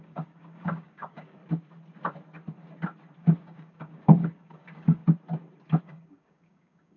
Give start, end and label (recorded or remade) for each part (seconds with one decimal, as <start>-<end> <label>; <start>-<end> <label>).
0.0-1.4 remade; 1.4-3.2 recorded; 3.2-5.0 remade; 5.0-5.8 recorded; 5.8-7.0 remade